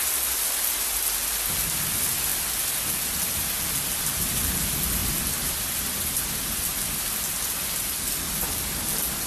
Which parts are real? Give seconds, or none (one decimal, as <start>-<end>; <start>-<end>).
0.0-9.3